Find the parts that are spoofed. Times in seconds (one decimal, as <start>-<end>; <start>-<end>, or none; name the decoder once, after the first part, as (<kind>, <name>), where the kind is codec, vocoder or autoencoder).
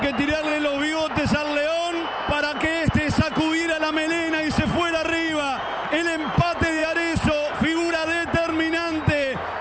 none